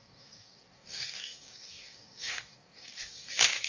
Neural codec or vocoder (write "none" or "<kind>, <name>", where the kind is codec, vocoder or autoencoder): codec, DAC